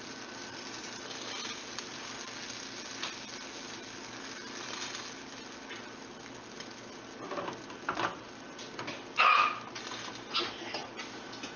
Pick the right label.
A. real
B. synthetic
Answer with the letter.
A